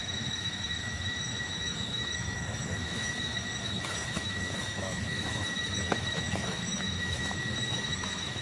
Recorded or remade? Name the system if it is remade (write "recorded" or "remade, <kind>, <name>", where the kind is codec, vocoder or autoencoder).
remade, autoencoder, DAC-VAE